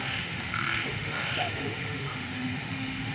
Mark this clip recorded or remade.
remade